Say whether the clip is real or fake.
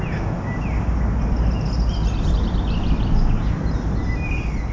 real